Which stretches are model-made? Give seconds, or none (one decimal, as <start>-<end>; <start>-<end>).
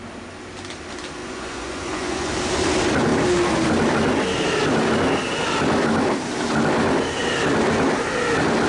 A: 1.2-2.3